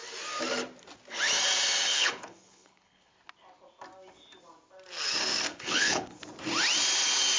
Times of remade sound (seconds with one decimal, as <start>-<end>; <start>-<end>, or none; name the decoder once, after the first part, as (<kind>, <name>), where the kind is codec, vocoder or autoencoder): 1.9-3.1 (codec, HILCodec); 5.5-6.2